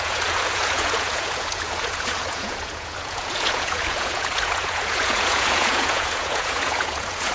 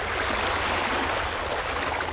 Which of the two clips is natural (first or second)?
second